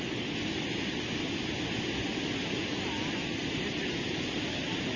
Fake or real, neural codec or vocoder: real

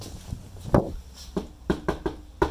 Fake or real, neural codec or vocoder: real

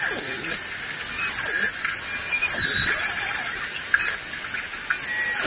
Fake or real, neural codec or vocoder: real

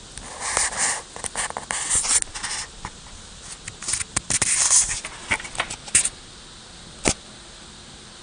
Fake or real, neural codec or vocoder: real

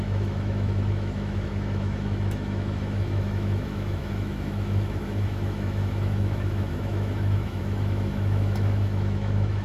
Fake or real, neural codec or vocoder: fake, autoencoder, DAC-VAE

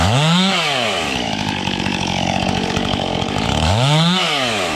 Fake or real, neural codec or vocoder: fake, codec, DAC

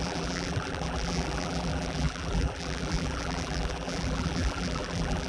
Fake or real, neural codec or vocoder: fake, vocoder, BigVGAN v2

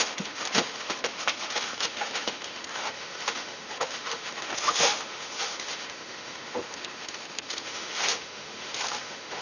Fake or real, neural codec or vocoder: fake, autoencoder, DAC-VAE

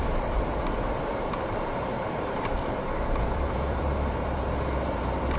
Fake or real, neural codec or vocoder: fake, vocoder, BigVGAN v2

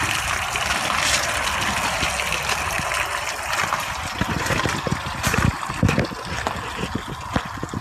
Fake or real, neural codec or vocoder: real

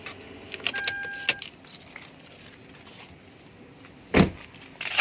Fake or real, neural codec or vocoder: real